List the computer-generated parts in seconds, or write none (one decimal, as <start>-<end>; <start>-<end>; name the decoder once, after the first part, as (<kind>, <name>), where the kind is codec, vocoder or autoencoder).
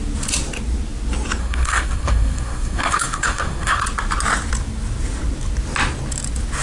1.4-3.8 (codec, SNAC)